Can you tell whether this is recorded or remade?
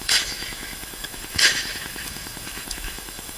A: remade